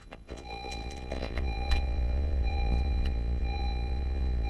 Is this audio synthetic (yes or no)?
yes